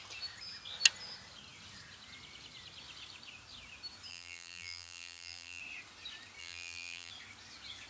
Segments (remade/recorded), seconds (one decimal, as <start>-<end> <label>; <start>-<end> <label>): 0.0-4.1 recorded; 4.1-5.6 remade; 5.6-6.4 recorded; 6.4-7.1 remade; 7.1-7.9 recorded